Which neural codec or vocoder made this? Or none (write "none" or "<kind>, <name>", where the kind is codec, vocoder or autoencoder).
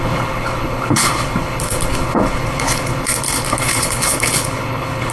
codec, HILCodec